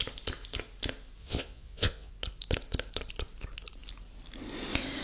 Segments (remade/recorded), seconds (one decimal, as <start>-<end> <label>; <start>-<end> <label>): 0.0-1.2 recorded; 1.2-2.1 remade; 2.1-5.0 recorded